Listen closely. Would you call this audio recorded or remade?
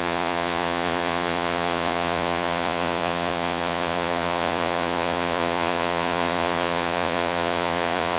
remade